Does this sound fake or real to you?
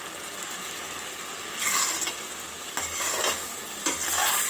real